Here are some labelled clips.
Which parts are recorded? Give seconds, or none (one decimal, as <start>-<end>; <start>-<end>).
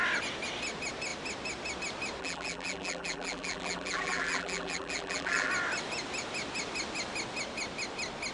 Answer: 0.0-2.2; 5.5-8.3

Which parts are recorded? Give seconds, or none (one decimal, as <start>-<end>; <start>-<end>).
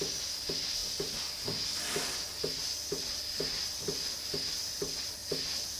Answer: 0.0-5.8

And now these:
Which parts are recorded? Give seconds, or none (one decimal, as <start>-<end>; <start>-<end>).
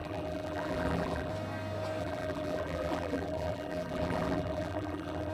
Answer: 1.3-2.0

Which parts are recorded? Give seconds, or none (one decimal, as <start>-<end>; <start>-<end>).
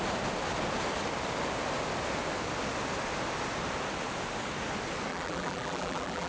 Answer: 0.0-5.1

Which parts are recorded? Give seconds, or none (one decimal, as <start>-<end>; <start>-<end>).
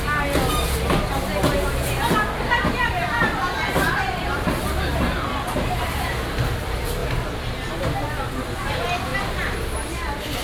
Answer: 0.0-1.5; 4.6-9.1